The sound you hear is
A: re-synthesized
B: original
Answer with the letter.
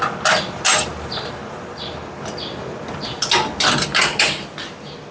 B